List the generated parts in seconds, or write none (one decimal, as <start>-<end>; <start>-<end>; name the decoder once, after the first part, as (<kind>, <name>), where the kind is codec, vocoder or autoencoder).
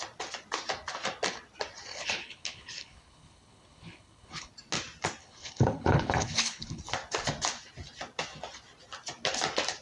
1.9-4.5 (codec, HILCodec); 5.2-6.8